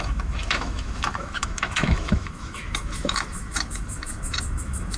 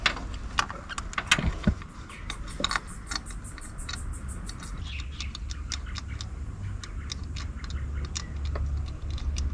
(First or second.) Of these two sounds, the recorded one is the second